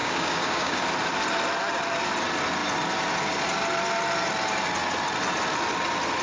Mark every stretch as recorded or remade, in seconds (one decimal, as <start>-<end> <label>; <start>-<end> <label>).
0.0-0.8 remade; 0.8-6.2 recorded